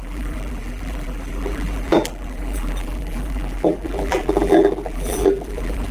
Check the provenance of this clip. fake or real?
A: fake